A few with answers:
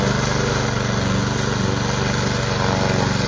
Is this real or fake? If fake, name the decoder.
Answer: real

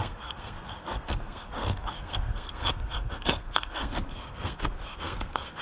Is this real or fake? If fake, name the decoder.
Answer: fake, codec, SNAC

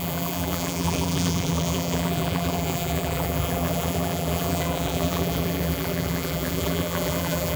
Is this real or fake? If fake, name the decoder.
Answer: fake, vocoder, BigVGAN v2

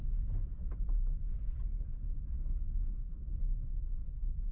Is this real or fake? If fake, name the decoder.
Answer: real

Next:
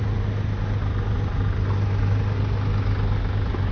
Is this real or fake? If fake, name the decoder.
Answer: real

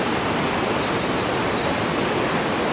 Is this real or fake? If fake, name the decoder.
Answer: real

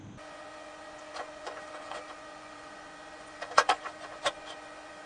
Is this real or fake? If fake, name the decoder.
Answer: fake, vocoder, Vocos